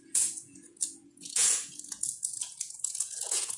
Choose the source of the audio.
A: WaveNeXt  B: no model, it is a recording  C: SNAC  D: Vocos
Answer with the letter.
D